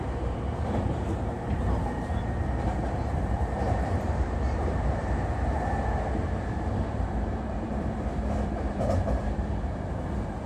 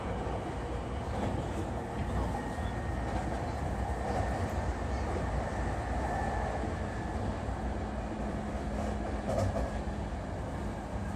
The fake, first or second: first